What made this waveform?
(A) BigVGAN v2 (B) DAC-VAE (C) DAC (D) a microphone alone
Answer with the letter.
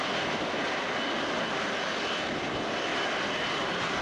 D